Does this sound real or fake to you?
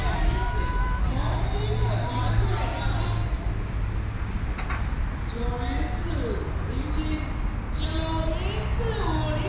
real